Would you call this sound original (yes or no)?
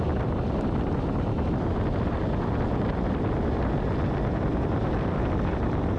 yes